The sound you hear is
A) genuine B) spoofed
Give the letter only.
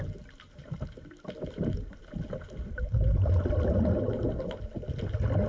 A